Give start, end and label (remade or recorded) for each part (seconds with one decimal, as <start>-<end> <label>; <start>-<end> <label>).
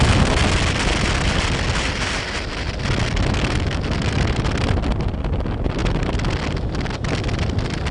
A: 0.0-7.9 recorded